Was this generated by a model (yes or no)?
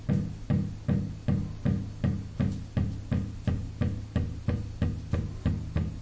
no